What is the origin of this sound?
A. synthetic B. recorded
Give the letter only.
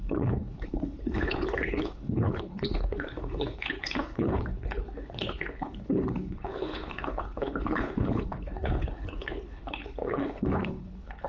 A